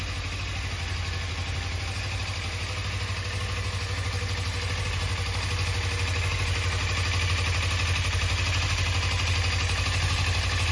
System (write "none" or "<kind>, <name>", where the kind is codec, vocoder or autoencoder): none